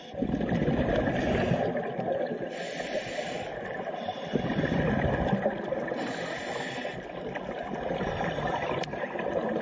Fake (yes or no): no